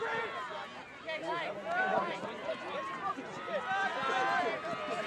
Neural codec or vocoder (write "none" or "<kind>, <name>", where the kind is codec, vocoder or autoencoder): none